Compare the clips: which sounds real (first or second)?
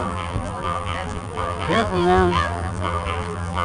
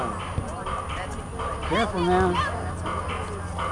second